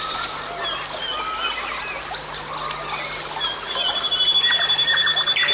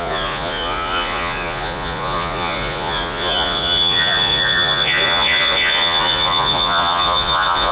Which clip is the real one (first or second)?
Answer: first